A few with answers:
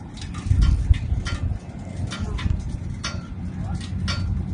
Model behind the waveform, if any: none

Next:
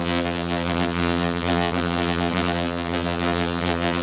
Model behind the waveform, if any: vocoder, BigVGAN v2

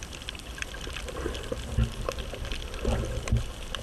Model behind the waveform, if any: none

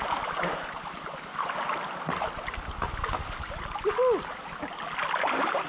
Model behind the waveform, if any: none